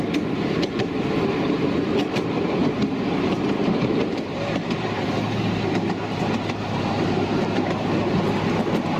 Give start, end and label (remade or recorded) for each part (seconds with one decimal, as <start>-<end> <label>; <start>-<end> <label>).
0.0-2.6 recorded; 2.6-7.7 remade; 7.7-9.0 recorded